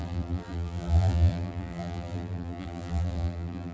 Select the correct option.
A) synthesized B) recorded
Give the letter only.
A